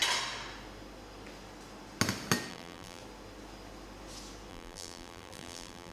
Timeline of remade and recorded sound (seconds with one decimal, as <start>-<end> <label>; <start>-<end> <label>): 0.0-2.5 recorded; 2.5-3.0 remade; 3.0-4.5 recorded; 4.5-5.9 remade

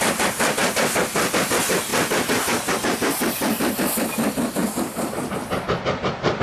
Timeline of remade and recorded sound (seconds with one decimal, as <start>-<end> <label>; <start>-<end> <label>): 0.0-4.6 recorded; 4.6-6.4 remade

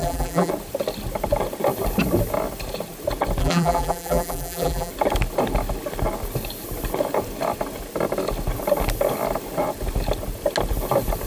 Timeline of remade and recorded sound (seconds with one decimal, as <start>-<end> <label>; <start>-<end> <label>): 0.0-0.5 remade; 0.5-3.4 recorded; 3.4-4.9 remade; 4.9-11.3 recorded

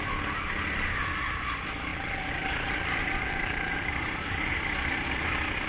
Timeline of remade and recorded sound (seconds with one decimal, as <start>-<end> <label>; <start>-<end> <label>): 0.0-1.9 recorded; 1.9-3.9 remade; 3.9-5.7 recorded

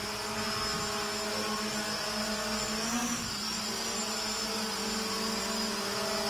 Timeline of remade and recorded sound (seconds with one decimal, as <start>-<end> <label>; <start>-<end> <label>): 0.0-6.3 recorded

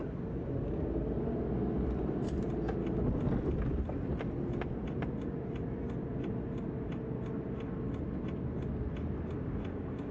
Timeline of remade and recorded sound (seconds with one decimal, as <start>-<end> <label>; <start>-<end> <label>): 0.0-10.1 recorded